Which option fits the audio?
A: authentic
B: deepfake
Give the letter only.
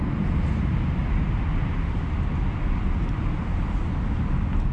A